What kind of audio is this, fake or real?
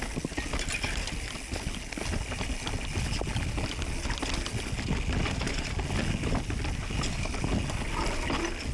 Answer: real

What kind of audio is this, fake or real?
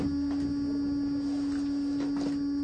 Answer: real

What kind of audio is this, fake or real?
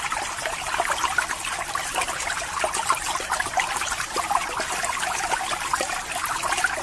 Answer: real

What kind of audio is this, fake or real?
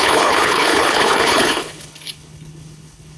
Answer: fake